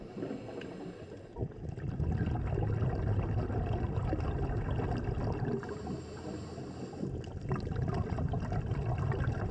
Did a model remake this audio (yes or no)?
no